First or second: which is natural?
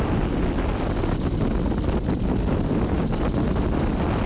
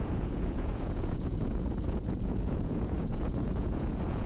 first